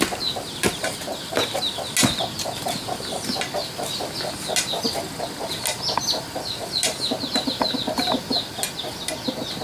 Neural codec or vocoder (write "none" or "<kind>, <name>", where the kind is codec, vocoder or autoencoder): none